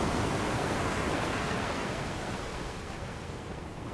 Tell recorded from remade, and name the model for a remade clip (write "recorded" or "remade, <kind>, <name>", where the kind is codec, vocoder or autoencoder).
remade, codec, SNAC